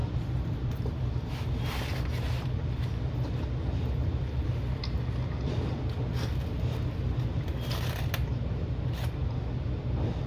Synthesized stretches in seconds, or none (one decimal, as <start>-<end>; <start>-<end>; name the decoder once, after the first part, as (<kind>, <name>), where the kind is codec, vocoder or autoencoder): 0.0-1.3 (vocoder, BigVGAN v2)